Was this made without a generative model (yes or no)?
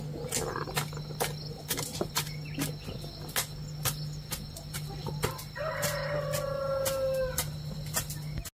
yes